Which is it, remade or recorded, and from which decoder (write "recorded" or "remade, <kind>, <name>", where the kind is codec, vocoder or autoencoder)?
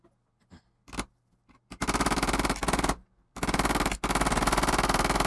recorded